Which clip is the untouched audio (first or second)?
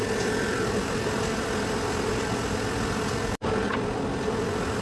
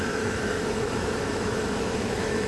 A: first